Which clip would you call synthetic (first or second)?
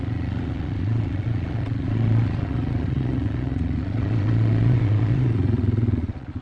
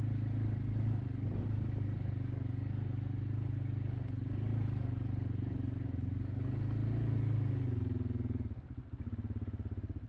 first